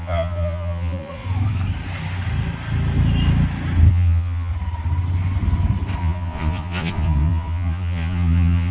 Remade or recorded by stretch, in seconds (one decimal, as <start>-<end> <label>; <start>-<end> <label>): 0.0-1.2 remade; 1.2-3.9 recorded; 3.9-4.5 remade; 4.5-6.0 recorded; 6.0-8.7 remade